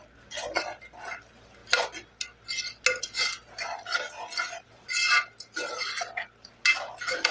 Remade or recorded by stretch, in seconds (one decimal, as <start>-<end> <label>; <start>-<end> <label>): 0.0-7.3 recorded